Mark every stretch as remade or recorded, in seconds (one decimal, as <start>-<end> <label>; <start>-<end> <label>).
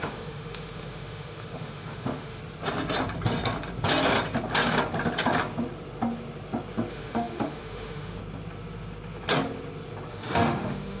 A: 0.0-2.4 remade; 2.4-6.9 recorded; 6.9-8.2 remade; 8.2-10.1 recorded; 10.1-11.0 remade